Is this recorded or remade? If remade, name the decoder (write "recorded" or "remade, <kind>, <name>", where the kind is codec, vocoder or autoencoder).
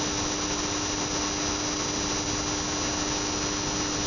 recorded